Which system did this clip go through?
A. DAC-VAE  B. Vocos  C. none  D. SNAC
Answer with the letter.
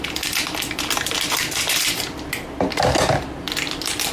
C